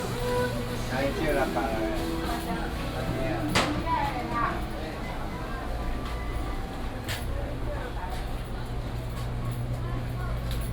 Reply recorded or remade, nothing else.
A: recorded